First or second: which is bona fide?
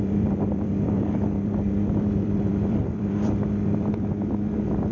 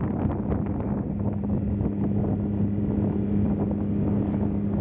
second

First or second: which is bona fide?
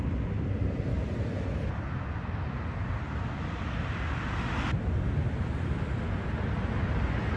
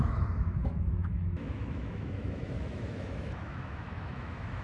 first